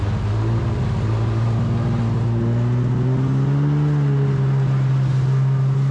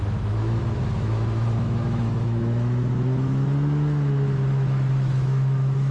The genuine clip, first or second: first